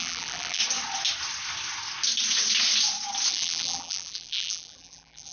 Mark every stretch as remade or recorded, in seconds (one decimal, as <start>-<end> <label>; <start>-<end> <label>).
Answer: 0.0-0.6 remade; 0.6-3.3 recorded; 3.3-5.3 remade